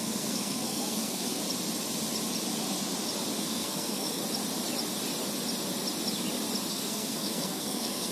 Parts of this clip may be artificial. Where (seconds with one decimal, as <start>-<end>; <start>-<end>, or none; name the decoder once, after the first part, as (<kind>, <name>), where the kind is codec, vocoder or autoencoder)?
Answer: 0.0-1.4 (codec, SNAC); 3.4-4.2; 6.7-8.1

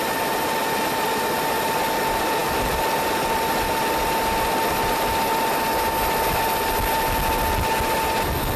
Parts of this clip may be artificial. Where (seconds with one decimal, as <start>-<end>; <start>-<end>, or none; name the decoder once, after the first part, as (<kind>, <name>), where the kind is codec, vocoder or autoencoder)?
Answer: none

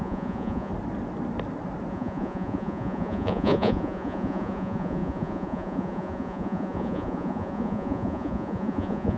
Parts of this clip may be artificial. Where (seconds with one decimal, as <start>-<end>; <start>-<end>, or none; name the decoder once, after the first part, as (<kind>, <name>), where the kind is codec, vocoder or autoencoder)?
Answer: 0.0-0.7 (vocoder, Vocos); 1.9-9.2

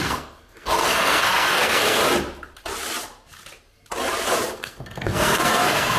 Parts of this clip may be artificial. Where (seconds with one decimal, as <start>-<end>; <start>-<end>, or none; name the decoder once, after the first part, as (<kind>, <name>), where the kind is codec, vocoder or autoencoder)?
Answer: 0.0-2.0 (codec, SNAC); 4.5-6.0